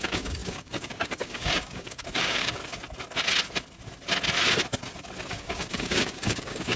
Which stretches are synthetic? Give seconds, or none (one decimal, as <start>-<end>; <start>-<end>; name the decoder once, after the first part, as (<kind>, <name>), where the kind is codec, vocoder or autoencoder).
0.0-2.6 (codec, DAC); 5.3-6.8

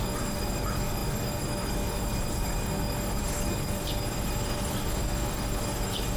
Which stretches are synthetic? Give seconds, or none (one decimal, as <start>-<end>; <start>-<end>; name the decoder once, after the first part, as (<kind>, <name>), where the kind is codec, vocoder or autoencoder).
0.0-6.2 (codec, DAC)